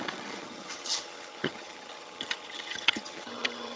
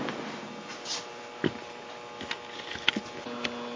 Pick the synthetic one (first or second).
first